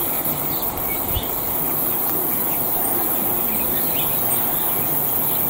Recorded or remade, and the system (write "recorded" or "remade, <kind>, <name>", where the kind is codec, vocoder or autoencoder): remade, vocoder, BigVGAN v2